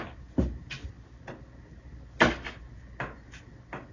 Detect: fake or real real